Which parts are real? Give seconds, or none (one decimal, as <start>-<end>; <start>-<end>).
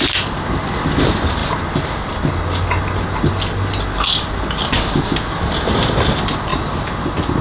0.0-7.4